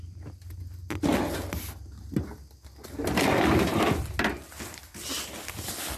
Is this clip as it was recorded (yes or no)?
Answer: yes